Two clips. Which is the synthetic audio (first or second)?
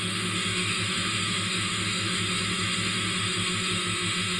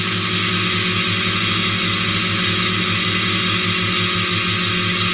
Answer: first